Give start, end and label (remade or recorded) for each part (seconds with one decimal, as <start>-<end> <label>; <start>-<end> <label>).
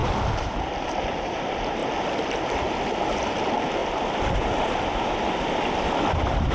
0.0-3.8 remade; 3.8-4.5 recorded; 4.5-6.5 remade